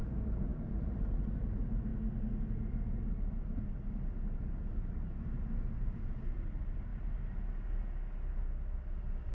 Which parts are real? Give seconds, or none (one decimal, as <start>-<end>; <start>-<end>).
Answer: 1.9-4.9; 6.9-9.3